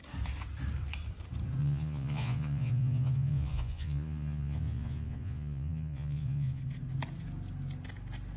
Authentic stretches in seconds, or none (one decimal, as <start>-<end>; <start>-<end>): 0.0-1.6; 6.6-8.4